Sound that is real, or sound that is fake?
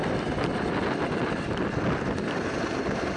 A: real